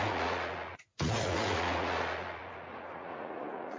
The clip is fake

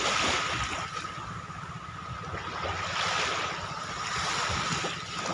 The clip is real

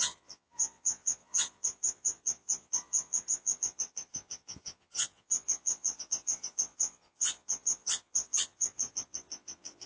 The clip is fake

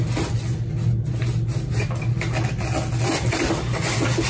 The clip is real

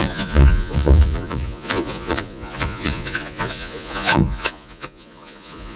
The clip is fake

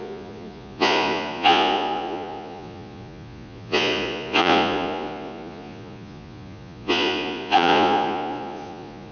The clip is fake